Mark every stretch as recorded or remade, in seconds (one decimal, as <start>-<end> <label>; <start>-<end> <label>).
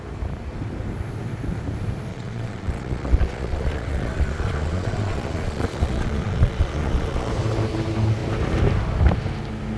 0.0-2.1 recorded; 2.1-7.3 remade; 7.3-9.8 recorded